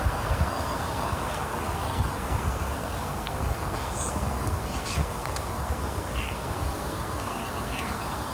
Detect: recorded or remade remade